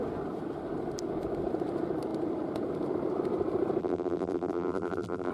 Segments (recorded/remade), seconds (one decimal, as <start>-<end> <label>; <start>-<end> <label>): 0.0-3.8 recorded; 3.8-5.3 remade